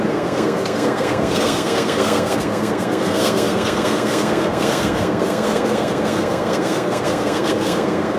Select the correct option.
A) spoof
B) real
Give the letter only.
A